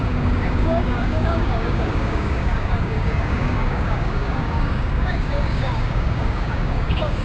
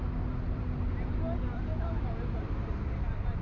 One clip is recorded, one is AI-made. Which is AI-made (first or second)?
first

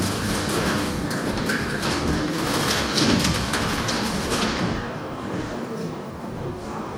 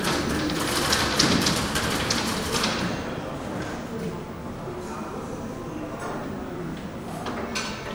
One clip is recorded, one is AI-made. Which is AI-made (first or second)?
first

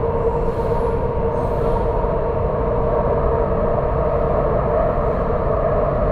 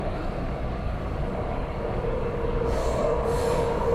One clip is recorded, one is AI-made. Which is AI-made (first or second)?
second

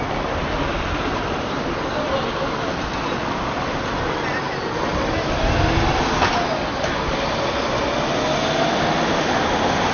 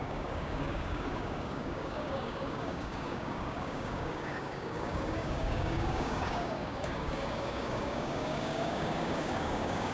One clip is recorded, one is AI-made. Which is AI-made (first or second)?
second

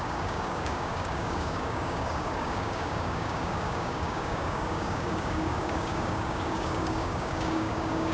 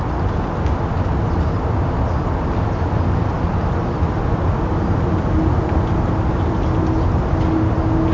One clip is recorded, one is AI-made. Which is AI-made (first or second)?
first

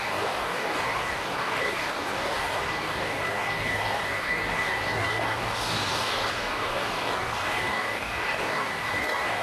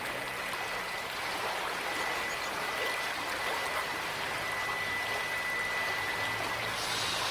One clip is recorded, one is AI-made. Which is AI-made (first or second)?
first